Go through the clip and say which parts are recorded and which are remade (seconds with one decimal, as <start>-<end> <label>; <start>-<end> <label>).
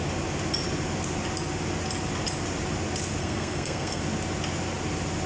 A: 0.0-3.2 recorded; 3.2-4.0 remade; 4.0-5.3 recorded